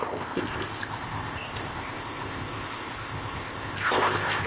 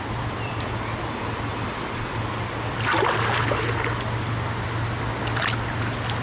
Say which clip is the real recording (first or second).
second